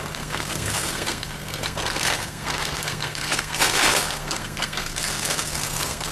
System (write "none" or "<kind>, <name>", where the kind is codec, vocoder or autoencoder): codec, SNAC